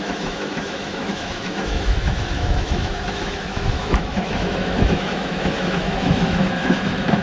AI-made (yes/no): yes